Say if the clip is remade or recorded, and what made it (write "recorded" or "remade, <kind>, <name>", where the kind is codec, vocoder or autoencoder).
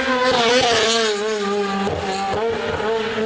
recorded